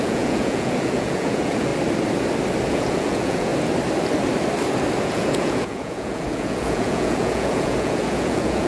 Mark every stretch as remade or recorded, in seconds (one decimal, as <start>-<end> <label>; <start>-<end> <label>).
0.0-1.7 remade; 1.7-2.7 recorded; 2.7-3.5 remade; 3.5-5.0 recorded; 5.0-8.7 remade